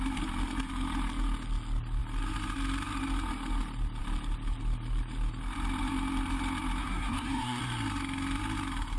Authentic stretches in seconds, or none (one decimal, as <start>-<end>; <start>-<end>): 0.0-6.8; 7.6-9.0